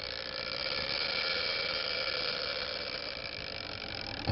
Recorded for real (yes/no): yes